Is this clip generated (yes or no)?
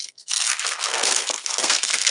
yes